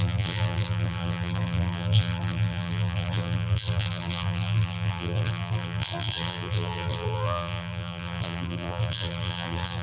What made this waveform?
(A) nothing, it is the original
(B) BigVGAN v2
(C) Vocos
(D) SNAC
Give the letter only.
B